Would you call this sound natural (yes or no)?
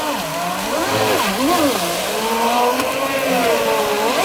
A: yes